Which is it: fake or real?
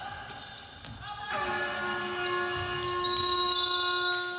real